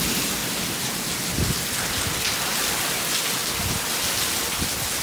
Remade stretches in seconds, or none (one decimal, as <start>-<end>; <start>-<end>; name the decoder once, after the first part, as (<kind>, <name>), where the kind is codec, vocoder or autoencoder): none